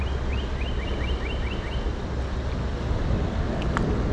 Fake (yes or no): no